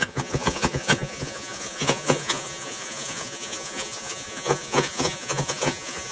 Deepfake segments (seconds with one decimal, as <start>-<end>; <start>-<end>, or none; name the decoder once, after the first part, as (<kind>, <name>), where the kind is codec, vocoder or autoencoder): 0.0-6.1 (vocoder, Vocos)